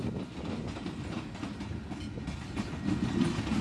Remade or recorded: recorded